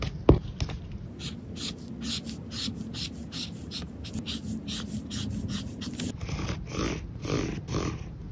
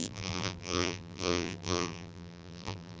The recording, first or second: first